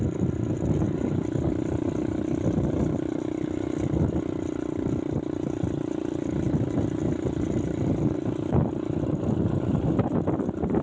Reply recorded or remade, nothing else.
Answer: recorded